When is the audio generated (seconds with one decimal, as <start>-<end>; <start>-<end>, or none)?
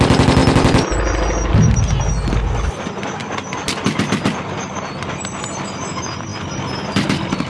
none